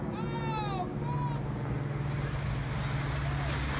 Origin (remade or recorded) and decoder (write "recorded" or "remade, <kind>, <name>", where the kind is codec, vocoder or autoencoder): recorded